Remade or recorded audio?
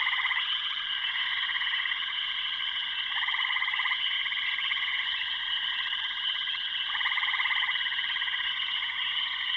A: remade